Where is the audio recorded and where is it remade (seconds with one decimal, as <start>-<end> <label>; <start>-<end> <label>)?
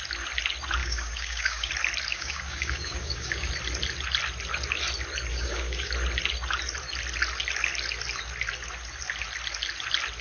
0.0-0.8 recorded; 0.8-1.7 remade; 1.7-2.1 recorded; 2.1-3.5 remade; 3.5-5.3 recorded; 5.3-5.9 remade; 5.9-10.2 recorded